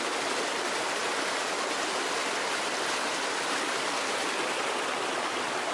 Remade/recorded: recorded